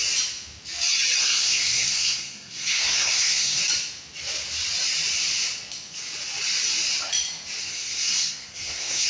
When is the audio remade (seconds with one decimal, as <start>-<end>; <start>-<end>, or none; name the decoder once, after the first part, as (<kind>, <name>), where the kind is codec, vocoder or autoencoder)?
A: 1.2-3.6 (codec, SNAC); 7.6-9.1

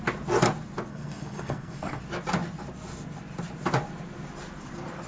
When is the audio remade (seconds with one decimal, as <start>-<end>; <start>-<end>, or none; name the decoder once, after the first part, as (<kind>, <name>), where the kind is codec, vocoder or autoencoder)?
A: 0.9-2.0 (codec, SNAC)

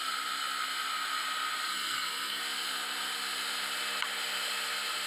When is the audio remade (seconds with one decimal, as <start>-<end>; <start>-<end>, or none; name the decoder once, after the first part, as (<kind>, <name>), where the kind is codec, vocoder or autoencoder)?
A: 1.7-2.4 (codec, SNAC)

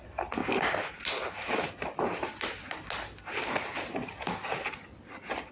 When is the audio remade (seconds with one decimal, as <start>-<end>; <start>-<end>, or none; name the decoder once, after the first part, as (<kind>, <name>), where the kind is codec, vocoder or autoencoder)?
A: none

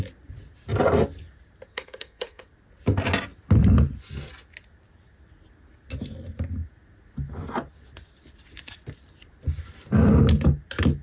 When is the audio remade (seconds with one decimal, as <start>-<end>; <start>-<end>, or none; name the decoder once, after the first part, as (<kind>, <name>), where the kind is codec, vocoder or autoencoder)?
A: 1.7-2.5 (codec, SNAC)

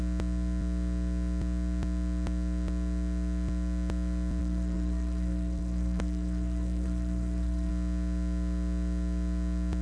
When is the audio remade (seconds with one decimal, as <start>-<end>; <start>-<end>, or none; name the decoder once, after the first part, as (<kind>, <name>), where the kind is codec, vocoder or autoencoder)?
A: 4.4-7.7 (codec, SNAC)